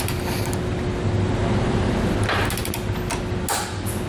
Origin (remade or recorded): recorded